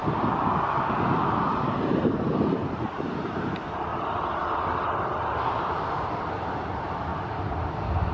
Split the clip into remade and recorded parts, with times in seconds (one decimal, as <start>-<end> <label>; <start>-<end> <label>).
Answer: 0.0-1.3 recorded; 1.3-3.9 remade; 3.9-5.6 recorded; 5.6-7.1 remade; 7.1-8.1 recorded